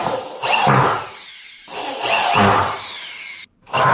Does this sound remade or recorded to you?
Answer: recorded